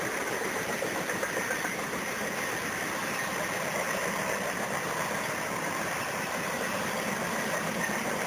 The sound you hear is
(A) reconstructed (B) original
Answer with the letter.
A